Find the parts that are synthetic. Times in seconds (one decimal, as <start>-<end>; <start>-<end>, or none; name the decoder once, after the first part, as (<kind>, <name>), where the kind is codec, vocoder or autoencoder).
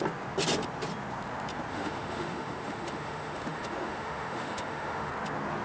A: 1.7-5.1 (autoencoder, DAC-VAE)